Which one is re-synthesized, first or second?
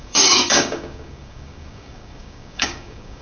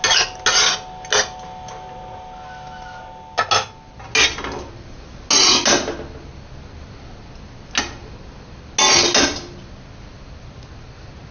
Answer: first